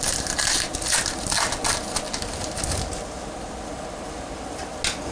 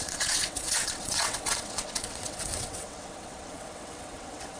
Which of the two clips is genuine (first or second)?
first